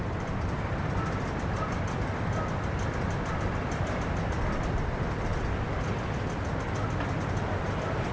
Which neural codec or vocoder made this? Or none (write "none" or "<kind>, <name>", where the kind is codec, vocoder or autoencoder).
none